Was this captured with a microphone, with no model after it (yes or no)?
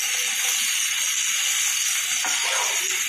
yes